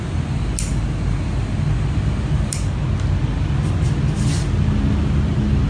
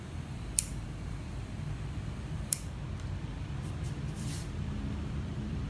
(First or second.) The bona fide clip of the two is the first